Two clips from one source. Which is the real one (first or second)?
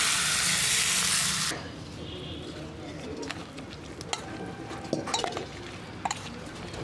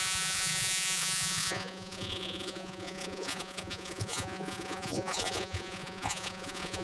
first